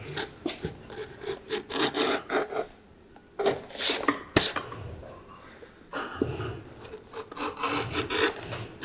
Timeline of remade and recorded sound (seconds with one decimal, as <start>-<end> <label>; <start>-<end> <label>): 0.0-1.0 recorded; 1.0-3.2 remade; 3.2-5.0 recorded; 5.0-5.7 remade; 5.7-8.8 recorded